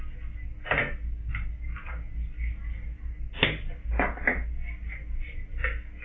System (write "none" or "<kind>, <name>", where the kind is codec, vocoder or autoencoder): none